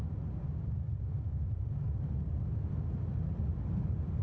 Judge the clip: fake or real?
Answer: real